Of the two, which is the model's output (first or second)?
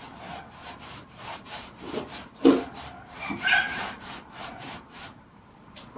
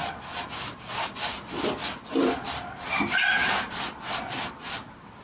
first